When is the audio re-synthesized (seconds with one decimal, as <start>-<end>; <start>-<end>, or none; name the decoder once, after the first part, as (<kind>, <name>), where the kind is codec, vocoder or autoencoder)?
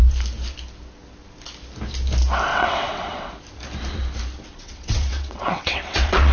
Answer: 2.5-3.3 (vocoder, WaveNeXt); 4.5-6.3